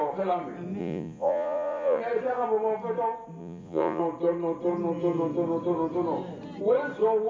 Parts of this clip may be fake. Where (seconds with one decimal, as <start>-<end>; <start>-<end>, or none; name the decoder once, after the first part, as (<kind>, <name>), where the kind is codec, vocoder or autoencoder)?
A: 0.8-2.0 (vocoder, Vocos); 3.4-4.0